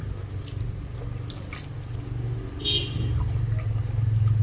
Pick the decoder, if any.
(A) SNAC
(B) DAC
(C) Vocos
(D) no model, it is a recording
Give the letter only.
D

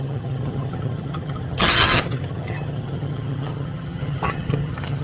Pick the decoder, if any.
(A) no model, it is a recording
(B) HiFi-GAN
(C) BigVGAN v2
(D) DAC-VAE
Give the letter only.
B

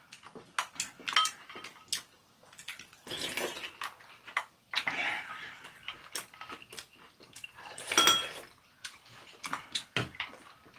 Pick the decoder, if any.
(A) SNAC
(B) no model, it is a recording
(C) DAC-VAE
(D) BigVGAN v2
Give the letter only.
B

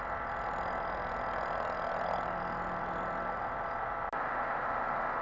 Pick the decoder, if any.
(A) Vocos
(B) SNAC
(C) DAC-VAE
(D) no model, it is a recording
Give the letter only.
D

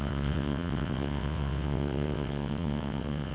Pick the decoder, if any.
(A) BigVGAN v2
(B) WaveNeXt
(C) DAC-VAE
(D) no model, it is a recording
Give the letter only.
B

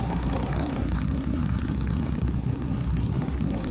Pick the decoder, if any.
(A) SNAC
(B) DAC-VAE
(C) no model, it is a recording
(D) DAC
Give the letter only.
A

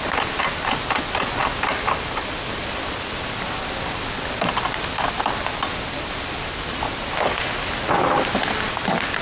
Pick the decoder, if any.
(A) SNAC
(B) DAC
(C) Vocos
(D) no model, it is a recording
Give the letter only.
D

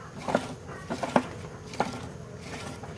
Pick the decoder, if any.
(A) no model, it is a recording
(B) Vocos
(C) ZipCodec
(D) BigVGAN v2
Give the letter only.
A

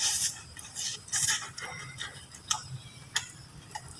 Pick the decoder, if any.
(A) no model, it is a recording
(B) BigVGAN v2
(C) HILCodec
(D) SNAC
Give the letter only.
A